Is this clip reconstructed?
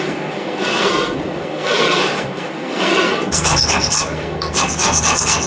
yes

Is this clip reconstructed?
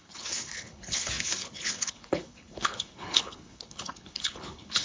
yes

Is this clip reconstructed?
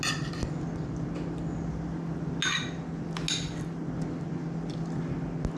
no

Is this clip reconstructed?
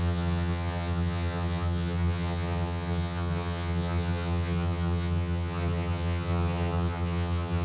yes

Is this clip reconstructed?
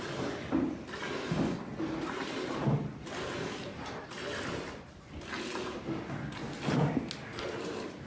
no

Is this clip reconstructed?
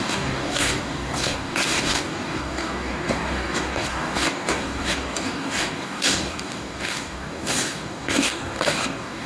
yes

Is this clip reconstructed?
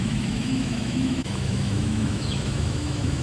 yes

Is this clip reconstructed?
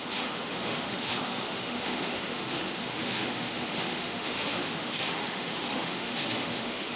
yes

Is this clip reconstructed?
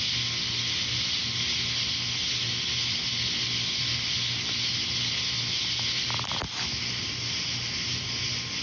no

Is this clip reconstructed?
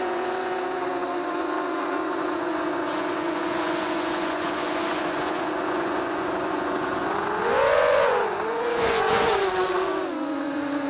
yes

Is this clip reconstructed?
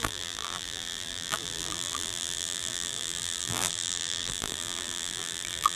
yes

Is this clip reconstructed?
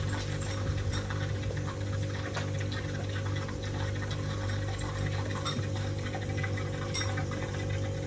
no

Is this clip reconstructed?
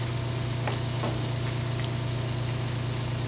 no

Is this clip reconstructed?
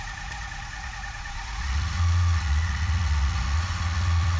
yes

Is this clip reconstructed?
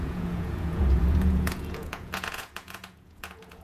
yes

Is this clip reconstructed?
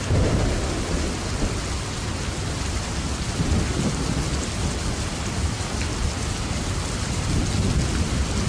no